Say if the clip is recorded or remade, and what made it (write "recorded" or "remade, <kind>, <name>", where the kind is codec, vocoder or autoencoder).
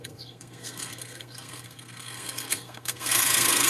remade, codec, SNAC